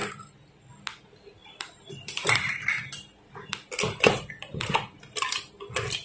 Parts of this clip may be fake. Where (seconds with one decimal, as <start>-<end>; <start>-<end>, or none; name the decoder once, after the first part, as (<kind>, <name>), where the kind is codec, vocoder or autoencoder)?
0.0-0.7 (vocoder, BigVGAN v2); 1.4-5.0